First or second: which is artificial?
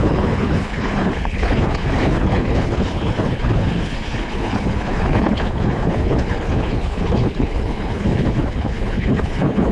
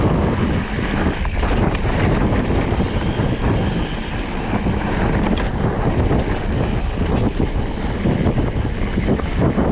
first